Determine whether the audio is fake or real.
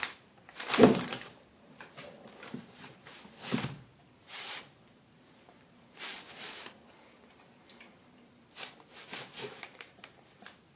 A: fake